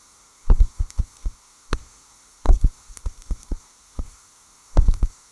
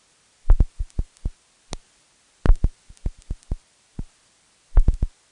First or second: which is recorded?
second